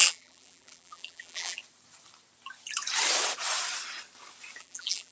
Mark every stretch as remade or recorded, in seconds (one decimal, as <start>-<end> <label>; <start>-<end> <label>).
0.0-1.6 remade; 1.6-4.6 recorded; 4.6-5.1 remade